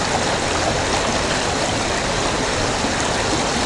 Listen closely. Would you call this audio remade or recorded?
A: recorded